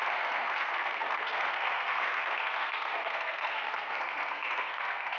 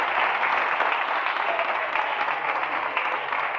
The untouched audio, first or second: second